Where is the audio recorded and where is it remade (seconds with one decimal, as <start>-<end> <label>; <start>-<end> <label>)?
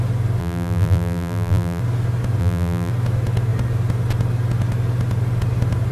0.0-0.4 recorded; 0.4-1.8 remade; 1.8-2.4 recorded; 2.4-2.9 remade; 2.9-5.9 recorded